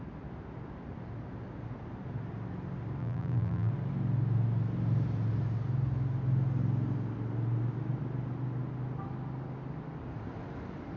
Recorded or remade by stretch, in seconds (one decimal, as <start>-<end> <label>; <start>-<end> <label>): 0.0-3.0 recorded; 3.0-3.7 remade; 3.7-11.0 recorded